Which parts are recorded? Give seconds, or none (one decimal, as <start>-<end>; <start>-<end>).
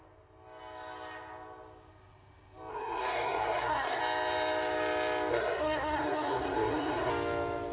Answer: 0.0-2.7; 4.0-5.3; 7.1-7.7